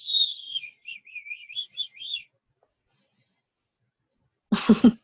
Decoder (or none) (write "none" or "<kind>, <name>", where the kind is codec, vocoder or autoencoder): none